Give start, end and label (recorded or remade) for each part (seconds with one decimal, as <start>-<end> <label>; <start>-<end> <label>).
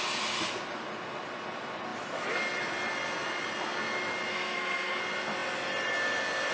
0.0-4.3 recorded; 4.3-5.0 remade; 5.0-6.5 recorded